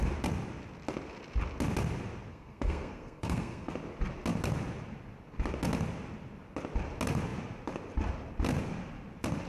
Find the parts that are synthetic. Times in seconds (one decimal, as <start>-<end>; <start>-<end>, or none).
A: 2.3-3.7